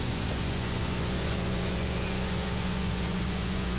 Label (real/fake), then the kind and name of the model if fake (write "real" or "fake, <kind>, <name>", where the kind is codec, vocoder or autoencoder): fake, vocoder, Vocos